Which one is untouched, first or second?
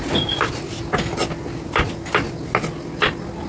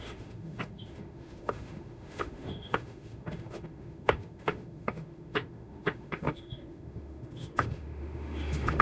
first